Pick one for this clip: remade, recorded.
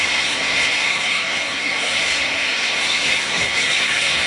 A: remade